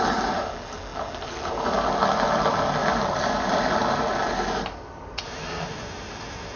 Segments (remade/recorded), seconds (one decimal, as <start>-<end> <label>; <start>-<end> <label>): 0.0-2.8 recorded; 2.8-4.2 remade; 4.2-6.6 recorded